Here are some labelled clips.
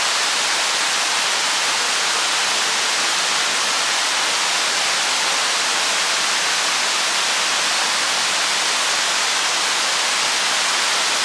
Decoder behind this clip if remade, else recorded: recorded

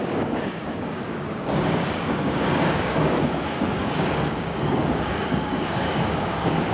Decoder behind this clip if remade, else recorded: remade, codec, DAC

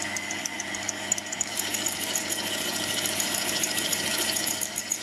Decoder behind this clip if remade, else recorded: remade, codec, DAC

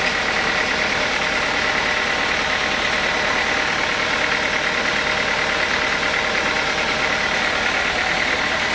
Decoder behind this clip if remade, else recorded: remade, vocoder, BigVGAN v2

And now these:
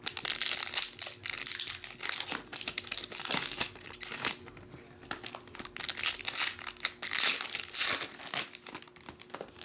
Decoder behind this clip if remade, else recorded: recorded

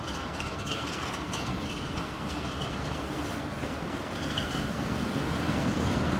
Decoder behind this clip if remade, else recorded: remade, codec, SNAC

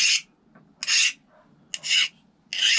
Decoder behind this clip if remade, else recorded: recorded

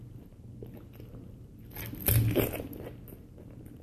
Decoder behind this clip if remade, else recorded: recorded